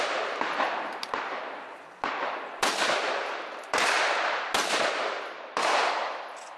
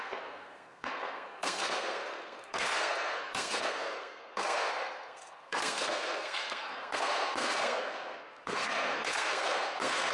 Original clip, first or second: first